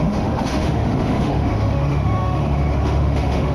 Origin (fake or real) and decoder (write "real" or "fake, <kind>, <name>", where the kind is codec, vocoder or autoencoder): fake, autoencoder, DAC-VAE